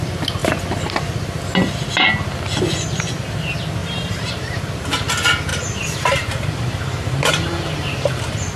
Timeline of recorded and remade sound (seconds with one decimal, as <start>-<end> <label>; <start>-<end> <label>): 0.0-3.8 recorded; 3.8-4.7 remade; 4.7-5.5 recorded; 5.5-8.2 remade; 8.2-8.6 recorded